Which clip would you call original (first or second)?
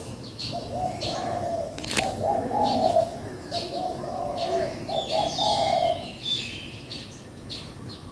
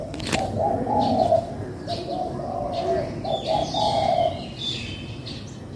second